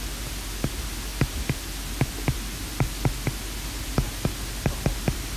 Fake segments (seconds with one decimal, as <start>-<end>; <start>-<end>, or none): none